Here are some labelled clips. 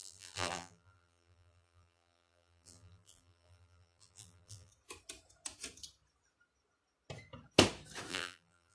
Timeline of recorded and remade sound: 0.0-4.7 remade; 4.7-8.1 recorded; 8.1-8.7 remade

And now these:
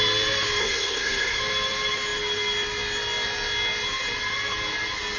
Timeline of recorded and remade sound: 0.0-0.6 recorded; 0.6-1.4 remade; 1.4-5.2 recorded